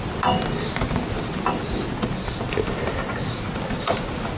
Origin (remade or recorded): recorded